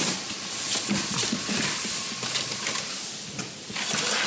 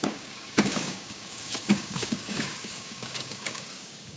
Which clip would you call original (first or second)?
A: first